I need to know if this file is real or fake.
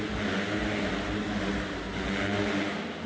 real